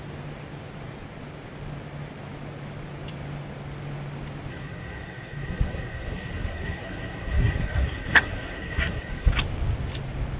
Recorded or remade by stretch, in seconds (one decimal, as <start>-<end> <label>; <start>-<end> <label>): 0.0-4.5 recorded; 4.5-9.3 remade; 9.3-10.4 recorded